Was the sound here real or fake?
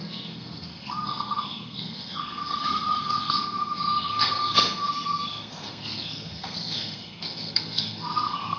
fake